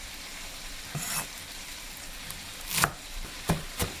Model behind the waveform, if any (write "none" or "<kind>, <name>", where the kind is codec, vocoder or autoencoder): vocoder, BigVGAN v2